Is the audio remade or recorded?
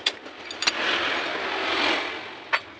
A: recorded